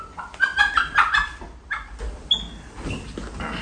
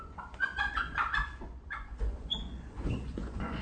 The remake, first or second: second